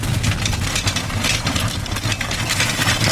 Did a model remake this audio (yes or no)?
no